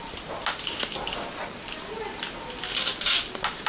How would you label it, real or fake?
real